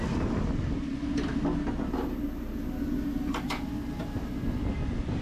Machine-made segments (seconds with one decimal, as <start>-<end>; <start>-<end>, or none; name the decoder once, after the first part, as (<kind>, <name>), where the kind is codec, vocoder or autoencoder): none